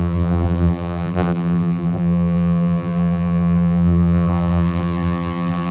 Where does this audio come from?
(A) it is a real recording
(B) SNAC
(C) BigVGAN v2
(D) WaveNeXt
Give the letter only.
C